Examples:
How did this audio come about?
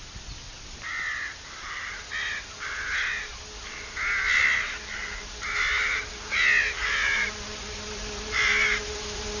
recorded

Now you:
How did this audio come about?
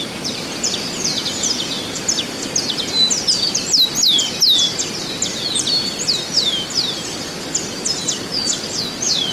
recorded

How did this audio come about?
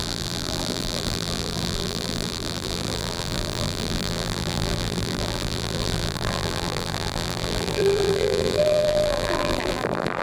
remade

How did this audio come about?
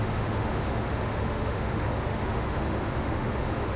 remade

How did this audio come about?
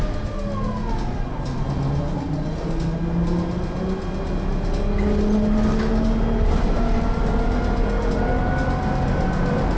recorded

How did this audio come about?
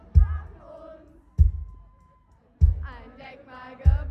recorded